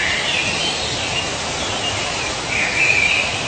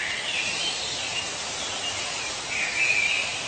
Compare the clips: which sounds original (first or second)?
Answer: second